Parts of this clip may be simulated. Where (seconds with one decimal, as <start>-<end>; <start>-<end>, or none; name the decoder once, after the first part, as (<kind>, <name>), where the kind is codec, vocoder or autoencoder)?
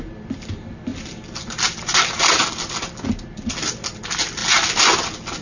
none